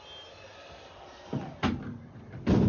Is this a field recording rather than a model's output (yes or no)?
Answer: yes